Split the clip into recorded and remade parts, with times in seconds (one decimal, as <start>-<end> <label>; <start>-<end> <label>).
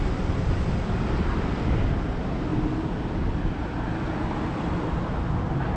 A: 0.0-5.8 recorded